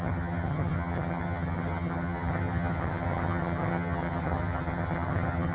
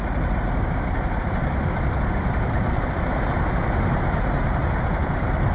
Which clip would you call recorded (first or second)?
second